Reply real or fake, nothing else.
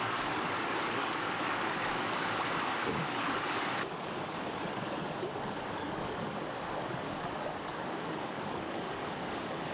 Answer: fake